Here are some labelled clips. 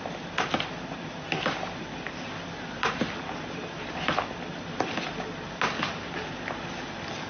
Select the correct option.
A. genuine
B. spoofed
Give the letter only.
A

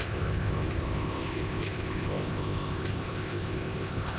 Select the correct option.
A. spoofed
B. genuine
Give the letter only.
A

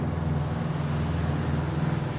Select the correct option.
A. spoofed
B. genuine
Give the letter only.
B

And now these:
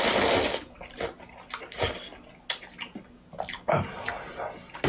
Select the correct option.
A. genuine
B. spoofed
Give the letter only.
A